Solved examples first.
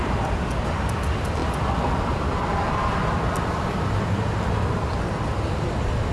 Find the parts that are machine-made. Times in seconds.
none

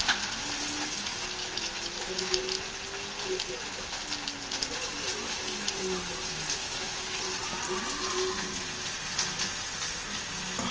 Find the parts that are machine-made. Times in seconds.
1.4-2.4 (autoencoder, DAC-VAE); 6.6-7.2

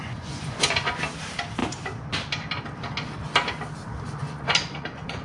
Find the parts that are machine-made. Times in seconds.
0.0-0.9 (vocoder, Vocos); 4.2-5.2